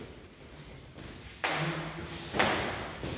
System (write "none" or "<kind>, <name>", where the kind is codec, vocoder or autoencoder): none